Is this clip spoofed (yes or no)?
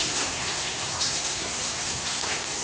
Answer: yes